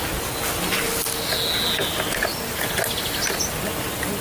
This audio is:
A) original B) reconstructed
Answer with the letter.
A